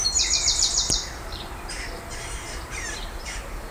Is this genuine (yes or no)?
no